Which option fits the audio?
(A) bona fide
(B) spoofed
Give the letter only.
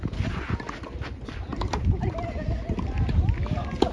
A